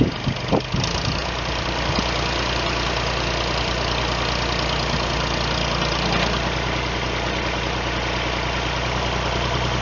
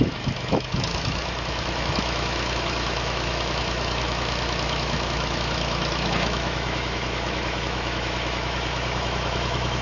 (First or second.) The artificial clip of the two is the second